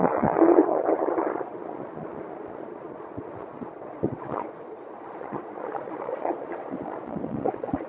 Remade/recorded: remade